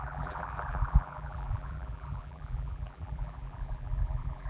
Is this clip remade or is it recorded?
remade